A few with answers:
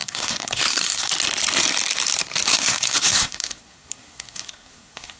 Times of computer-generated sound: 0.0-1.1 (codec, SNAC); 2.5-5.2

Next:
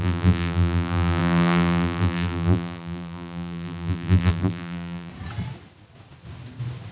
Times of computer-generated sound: 0.0-5.1 (vocoder, BigVGAN v2)